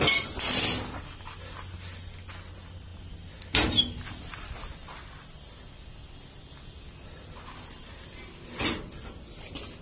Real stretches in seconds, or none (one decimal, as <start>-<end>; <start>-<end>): 0.0-9.8